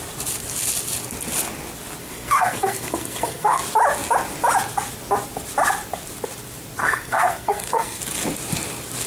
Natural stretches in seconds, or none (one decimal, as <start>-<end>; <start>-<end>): 0.0-2.0; 3.6-6.8; 8.0-9.1